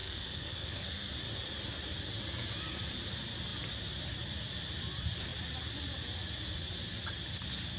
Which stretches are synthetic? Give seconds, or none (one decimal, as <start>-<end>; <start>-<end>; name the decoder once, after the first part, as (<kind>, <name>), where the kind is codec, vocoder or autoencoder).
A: 0.0-1.1 (codec, SNAC)